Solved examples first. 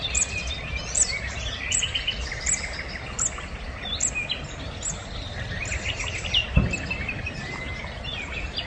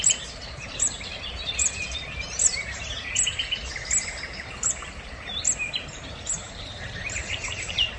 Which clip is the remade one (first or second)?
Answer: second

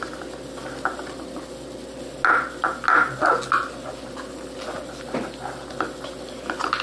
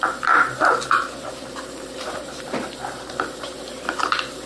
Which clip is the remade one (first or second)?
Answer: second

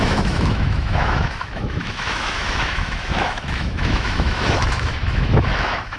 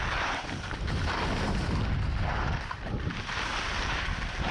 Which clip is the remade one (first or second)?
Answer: first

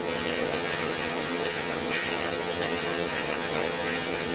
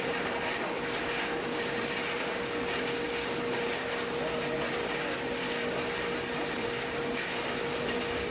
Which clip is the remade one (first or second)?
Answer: first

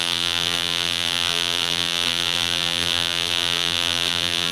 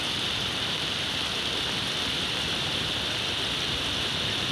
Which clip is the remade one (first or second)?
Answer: first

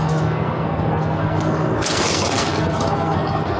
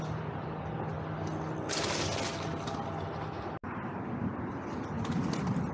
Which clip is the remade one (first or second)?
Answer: first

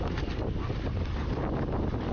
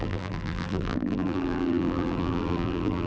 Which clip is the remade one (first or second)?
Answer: second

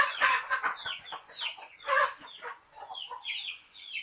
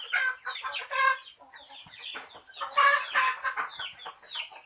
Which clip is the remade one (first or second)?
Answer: first